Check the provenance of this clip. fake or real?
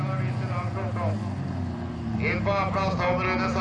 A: real